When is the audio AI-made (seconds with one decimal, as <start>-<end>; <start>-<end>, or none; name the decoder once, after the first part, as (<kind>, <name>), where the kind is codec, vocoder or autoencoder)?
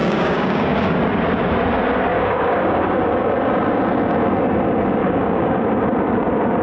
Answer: 0.0-1.0 (codec, DAC); 2.1-3.1; 5.0-5.6